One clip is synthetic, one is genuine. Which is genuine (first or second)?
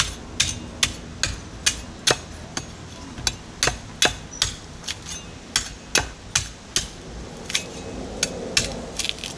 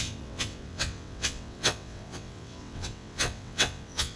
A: first